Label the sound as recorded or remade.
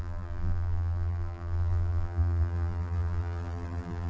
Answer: remade